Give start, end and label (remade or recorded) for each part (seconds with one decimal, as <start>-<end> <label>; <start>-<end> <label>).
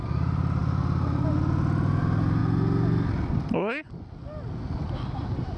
0.0-5.6 recorded